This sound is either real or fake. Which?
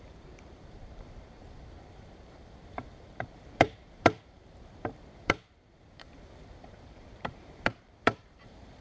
fake